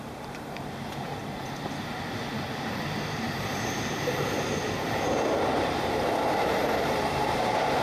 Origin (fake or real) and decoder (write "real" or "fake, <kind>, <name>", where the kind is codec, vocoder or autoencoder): fake, vocoder, BigVGAN v2